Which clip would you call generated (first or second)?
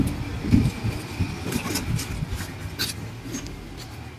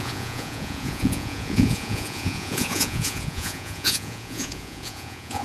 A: second